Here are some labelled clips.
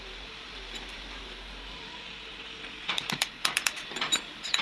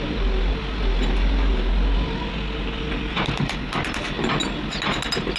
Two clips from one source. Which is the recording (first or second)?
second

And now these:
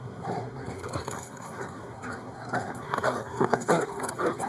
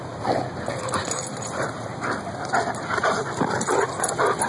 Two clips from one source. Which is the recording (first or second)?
second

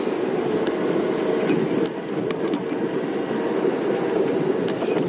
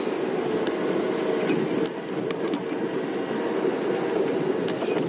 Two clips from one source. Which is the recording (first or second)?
second